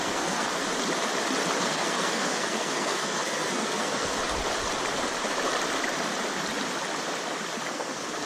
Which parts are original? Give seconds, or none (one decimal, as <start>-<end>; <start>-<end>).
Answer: 0.7-1.6; 4.2-7.7